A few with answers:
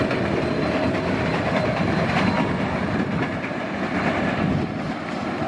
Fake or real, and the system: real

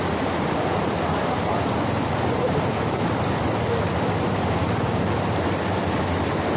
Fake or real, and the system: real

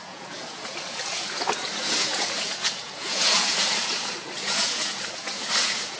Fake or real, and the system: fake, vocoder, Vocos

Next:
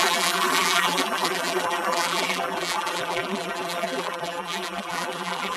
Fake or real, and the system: fake, vocoder, BigVGAN v2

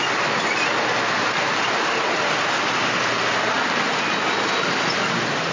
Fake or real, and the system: real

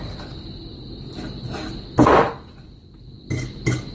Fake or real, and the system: real